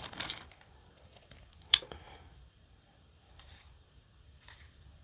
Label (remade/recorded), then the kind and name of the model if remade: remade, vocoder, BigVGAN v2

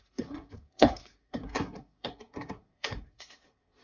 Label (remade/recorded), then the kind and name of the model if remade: remade, codec, SNAC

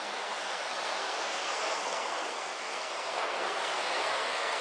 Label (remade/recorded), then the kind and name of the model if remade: remade, codec, SNAC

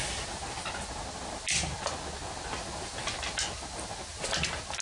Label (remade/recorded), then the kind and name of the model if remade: recorded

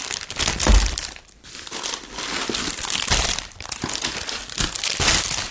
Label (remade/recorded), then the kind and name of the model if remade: remade, vocoder, BigVGAN v2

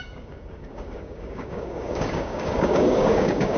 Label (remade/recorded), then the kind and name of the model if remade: remade, codec, DAC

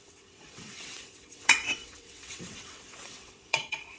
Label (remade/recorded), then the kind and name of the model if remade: remade, vocoder, WaveNeXt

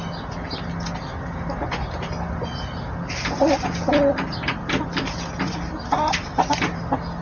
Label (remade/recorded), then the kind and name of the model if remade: recorded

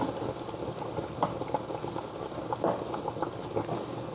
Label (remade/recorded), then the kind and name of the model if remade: recorded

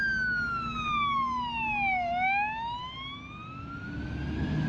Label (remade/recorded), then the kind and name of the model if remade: recorded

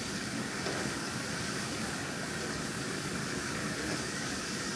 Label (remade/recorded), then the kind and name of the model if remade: remade, codec, DAC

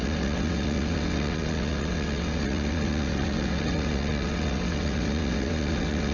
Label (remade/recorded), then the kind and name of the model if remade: remade, vocoder, WaveNeXt